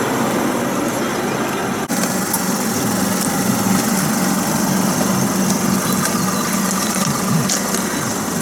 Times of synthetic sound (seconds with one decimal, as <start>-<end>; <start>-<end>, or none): none